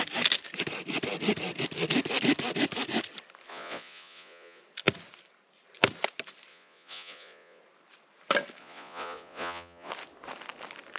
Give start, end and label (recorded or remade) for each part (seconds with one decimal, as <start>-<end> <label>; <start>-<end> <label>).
0.0-3.5 recorded; 3.5-4.6 remade; 4.6-6.5 recorded; 6.5-7.6 remade; 7.6-8.6 recorded; 8.6-9.9 remade; 9.9-11.0 recorded